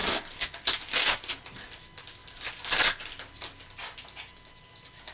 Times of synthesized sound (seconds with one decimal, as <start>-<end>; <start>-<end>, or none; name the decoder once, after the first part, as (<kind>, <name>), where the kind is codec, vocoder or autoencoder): none